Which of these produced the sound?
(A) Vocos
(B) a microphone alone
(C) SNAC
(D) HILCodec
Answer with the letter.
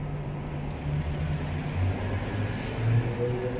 B